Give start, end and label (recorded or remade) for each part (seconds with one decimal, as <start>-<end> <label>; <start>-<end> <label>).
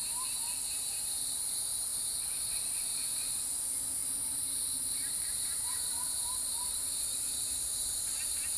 0.0-4.0 recorded; 4.0-8.6 remade